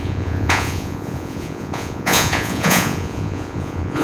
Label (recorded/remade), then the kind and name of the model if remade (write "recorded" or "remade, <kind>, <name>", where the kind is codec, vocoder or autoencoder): remade, vocoder, Vocos